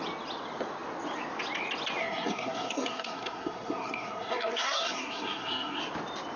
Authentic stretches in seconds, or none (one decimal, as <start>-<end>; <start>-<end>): 0.0-2.0; 5.8-6.4